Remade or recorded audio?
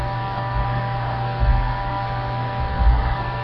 remade